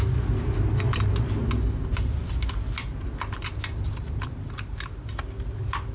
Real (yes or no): yes